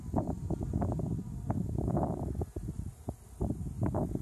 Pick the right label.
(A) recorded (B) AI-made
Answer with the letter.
A